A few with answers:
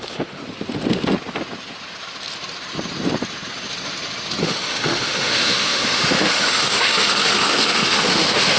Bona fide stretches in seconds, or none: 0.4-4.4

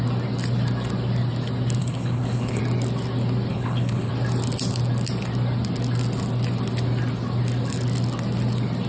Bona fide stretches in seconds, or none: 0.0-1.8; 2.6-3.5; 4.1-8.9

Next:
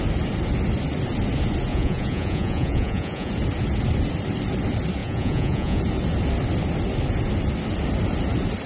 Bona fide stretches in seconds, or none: 0.0-1.7; 3.3-5.0; 5.8-8.7

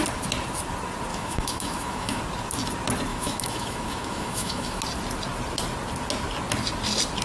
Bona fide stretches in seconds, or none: 0.0-1.1; 2.2-3.1; 4.8-7.2

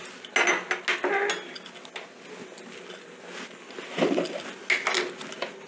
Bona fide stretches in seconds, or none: 0.0-5.7